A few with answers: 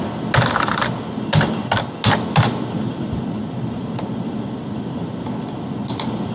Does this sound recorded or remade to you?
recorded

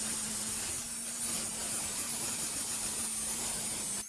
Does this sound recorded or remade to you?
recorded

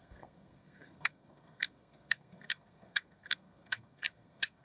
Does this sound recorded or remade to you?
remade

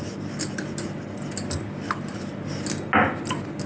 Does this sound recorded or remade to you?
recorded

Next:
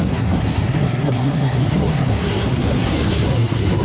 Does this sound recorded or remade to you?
remade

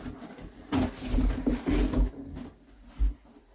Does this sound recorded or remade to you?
recorded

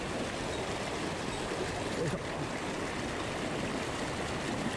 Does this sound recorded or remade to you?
recorded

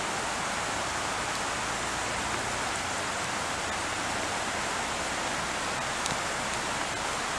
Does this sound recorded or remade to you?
recorded